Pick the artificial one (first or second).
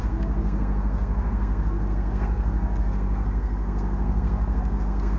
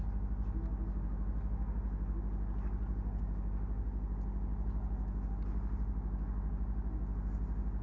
first